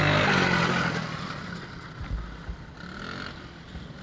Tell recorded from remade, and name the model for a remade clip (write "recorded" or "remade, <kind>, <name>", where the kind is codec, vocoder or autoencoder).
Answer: recorded